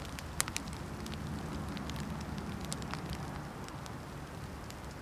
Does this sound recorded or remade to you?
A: recorded